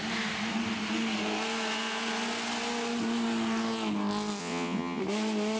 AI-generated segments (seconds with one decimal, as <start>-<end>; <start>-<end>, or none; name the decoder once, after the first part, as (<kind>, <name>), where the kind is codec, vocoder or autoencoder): 4.4-5.0 (vocoder, WaveNeXt)

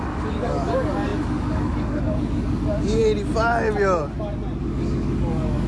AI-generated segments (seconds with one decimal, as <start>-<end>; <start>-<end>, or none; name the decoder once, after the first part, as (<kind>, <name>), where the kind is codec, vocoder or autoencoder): 0.0-3.0 (codec, DAC); 4.6-5.7

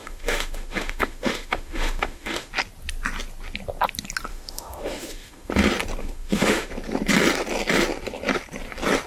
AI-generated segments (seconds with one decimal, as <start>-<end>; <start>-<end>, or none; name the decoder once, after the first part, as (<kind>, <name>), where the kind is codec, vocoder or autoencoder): 0.0-2.5 (autoencoder, DAC-VAE); 4.3-5.5; 6.0-6.7

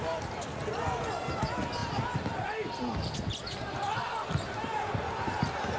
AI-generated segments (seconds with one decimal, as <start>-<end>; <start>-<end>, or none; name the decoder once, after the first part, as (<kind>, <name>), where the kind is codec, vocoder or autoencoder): none

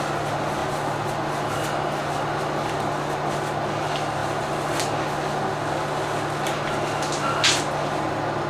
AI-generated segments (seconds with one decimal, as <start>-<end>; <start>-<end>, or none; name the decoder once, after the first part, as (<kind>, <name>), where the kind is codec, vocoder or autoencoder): none

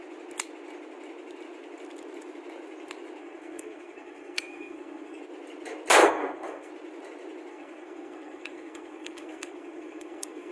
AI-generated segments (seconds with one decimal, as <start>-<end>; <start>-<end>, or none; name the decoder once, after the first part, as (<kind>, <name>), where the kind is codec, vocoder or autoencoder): 3.2-5.2 (codec, SNAC); 6.0-6.7; 7.5-10.5